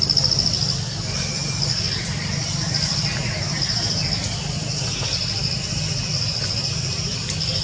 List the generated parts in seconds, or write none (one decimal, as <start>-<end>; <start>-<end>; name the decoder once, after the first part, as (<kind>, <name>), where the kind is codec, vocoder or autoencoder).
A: none